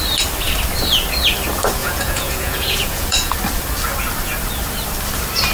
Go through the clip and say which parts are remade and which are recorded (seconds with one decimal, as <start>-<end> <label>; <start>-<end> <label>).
0.0-1.8 recorded; 1.8-3.3 remade; 3.3-5.5 recorded